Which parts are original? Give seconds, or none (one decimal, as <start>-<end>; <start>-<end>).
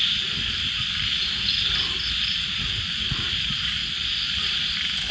1.2-2.3